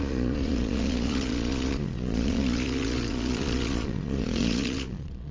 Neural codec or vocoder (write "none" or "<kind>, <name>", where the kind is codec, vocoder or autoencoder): vocoder, Vocos